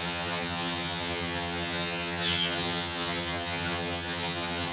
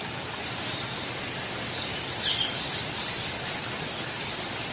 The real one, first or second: second